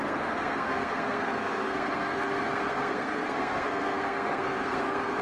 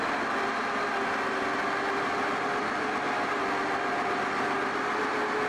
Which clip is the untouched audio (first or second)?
second